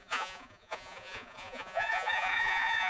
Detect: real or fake fake